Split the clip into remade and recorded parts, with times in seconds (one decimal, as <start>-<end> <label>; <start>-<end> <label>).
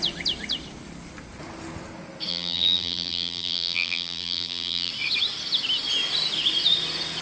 0.0-2.3 recorded; 2.3-4.9 remade; 4.9-7.2 recorded